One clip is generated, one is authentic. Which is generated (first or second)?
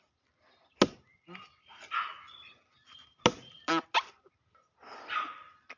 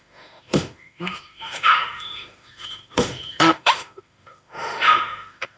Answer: second